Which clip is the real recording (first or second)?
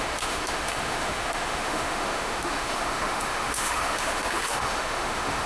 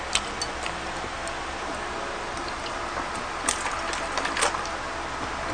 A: second